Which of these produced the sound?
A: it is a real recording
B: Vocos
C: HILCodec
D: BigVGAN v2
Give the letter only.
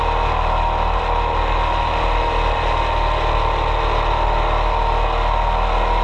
A